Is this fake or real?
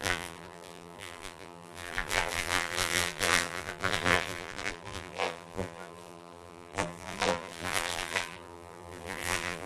fake